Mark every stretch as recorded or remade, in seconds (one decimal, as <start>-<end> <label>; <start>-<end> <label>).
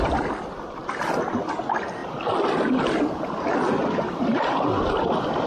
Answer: 0.0-5.5 recorded